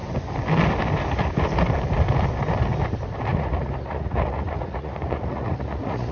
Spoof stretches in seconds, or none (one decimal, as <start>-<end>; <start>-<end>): 3.3-6.1